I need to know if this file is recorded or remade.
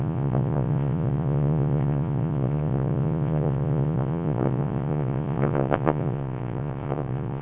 remade